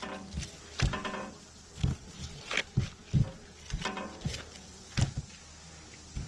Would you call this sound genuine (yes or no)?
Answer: yes